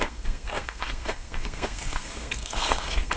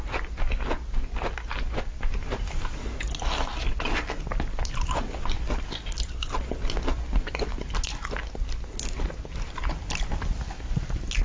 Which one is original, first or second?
second